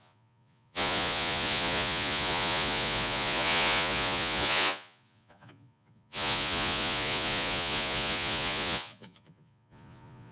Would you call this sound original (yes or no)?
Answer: no